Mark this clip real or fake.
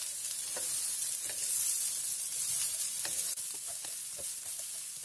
real